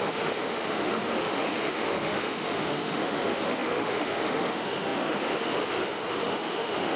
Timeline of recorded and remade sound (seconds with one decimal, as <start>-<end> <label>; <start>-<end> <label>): 0.0-7.0 remade

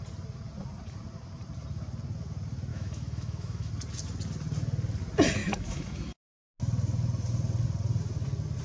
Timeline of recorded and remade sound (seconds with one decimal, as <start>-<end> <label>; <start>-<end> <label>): 0.0-2.7 recorded; 2.7-3.7 remade; 3.7-5.4 recorded; 5.4-6.2 remade; 6.2-8.6 recorded